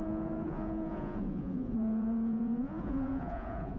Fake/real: fake